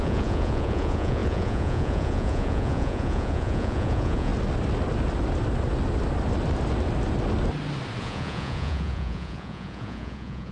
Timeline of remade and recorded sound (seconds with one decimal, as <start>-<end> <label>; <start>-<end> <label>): 0.0-4.3 remade; 4.3-8.0 recorded; 8.0-10.5 remade